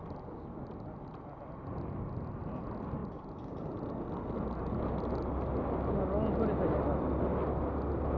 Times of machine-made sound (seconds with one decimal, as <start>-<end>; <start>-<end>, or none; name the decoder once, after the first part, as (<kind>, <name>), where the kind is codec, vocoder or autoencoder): none